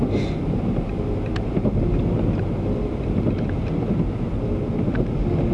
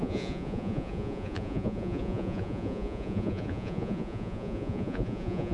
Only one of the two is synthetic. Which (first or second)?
second